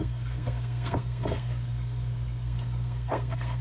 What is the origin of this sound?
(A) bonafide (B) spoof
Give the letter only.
B